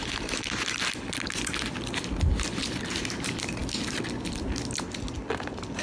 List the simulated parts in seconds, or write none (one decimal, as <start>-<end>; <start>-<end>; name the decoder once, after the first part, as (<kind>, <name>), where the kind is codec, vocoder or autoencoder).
none